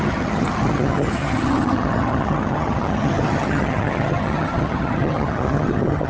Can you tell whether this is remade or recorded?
remade